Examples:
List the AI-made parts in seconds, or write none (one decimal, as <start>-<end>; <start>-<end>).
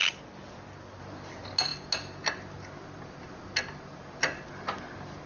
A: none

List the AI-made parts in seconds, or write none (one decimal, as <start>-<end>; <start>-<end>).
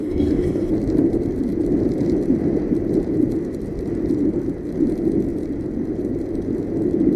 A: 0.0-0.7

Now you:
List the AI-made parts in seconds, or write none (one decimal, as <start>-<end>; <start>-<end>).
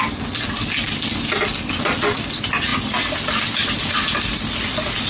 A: none